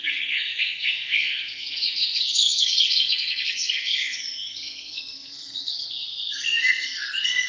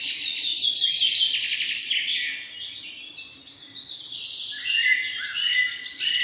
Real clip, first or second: second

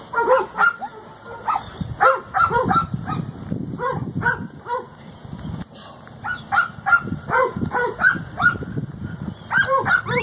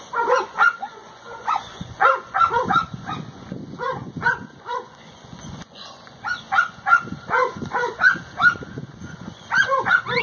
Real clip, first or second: first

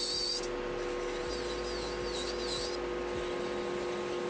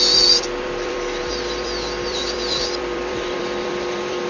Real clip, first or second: first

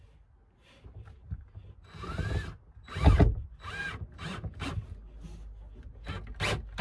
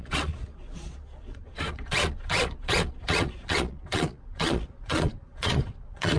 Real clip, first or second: first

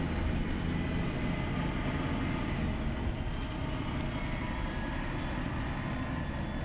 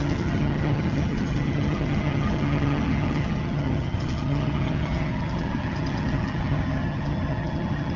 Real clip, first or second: first